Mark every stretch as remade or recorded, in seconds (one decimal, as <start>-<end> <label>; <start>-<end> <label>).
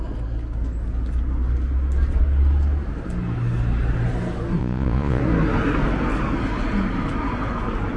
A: 0.0-4.6 recorded; 4.6-5.2 remade; 5.2-8.0 recorded